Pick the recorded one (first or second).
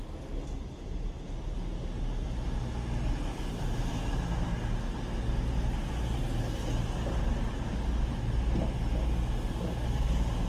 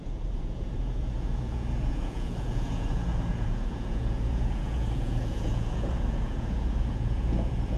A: first